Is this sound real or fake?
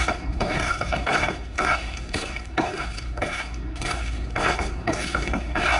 fake